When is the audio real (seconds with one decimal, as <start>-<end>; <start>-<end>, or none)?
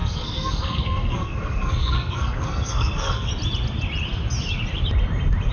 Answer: 3.3-5.5